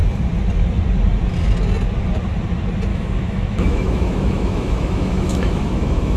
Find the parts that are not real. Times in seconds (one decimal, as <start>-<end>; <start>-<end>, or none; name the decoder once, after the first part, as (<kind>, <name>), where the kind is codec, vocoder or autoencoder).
2.9-6.2 (autoencoder, DAC-VAE)